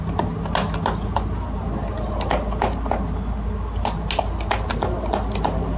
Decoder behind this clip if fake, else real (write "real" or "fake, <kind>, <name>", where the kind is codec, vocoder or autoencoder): real